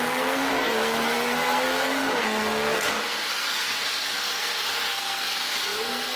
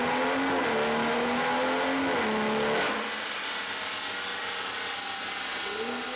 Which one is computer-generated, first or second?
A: first